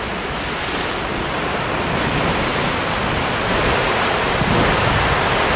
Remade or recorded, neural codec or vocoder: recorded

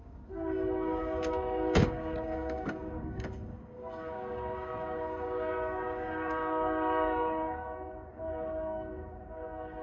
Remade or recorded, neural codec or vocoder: remade, codec, DAC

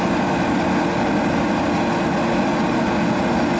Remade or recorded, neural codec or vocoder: recorded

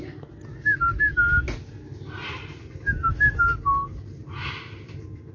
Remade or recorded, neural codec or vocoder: recorded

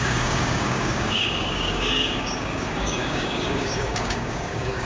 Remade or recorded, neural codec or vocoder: remade, codec, DAC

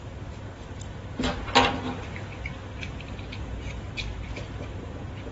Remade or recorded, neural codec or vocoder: recorded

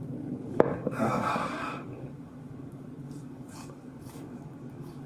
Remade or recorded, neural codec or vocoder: remade, codec, DAC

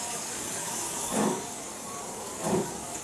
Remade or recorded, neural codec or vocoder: remade, codec, DAC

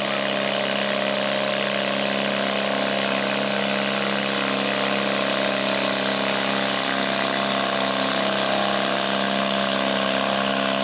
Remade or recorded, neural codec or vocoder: recorded